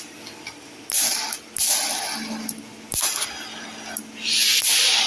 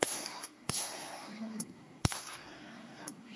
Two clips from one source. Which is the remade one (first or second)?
second